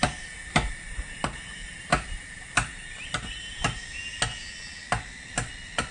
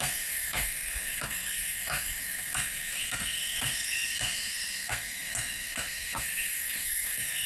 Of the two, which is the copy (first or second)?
second